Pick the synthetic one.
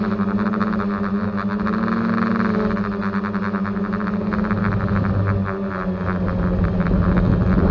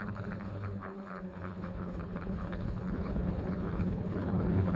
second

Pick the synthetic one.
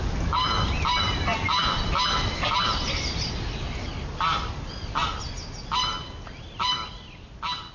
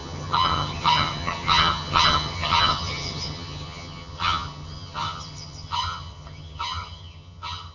second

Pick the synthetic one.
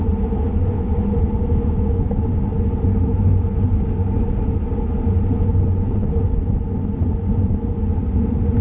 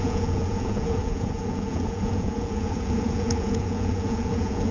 second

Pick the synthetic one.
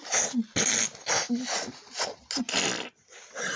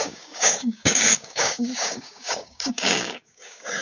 second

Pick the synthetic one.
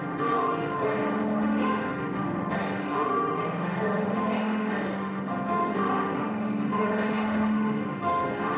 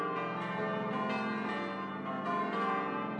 first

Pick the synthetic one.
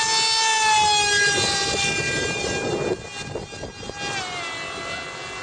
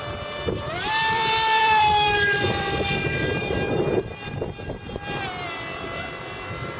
second